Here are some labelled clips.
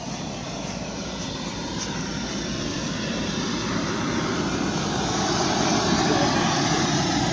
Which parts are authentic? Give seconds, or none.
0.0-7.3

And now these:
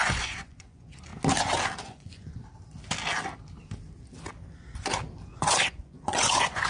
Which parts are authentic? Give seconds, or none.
1.1-1.8; 2.4-5.3

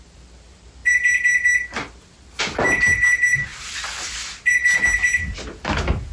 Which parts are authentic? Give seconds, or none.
0.0-6.1

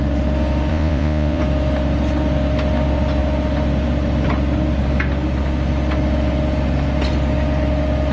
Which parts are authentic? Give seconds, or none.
0.0-0.7; 1.4-8.1

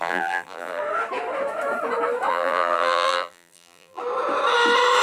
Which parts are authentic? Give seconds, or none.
0.8-2.3; 4.0-5.0